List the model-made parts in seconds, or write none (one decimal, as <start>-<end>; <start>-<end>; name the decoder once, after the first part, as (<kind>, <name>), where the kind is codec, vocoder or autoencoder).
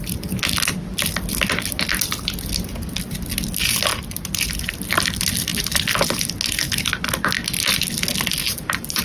8.4-9.0 (vocoder, BigVGAN v2)